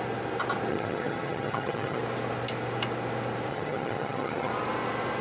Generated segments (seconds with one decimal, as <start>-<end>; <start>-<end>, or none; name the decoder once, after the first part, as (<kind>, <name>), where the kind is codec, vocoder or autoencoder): 0.7-2.0 (vocoder, HiFi-GAN); 3.5-4.5